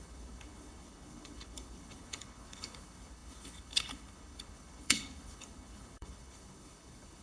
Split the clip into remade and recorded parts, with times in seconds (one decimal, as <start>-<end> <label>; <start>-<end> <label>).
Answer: 0.0-7.2 remade